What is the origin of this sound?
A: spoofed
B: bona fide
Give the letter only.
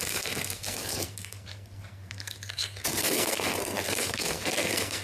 A